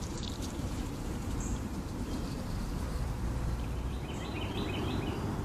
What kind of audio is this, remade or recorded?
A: remade